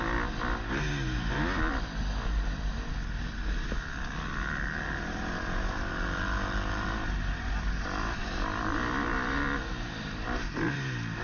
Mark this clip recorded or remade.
recorded